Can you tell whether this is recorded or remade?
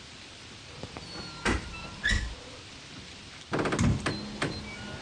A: recorded